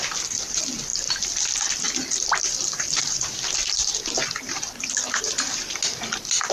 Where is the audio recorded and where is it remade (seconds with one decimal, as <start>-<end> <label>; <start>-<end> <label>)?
0.0-6.5 recorded